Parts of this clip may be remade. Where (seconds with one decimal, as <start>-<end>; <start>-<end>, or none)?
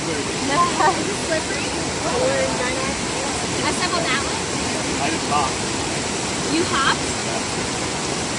7.2-8.0